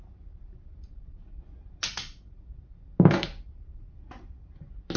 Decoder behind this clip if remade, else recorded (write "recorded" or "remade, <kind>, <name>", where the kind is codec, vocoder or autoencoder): recorded